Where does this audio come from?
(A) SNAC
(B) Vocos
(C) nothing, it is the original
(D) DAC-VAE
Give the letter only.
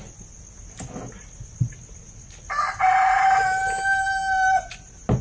C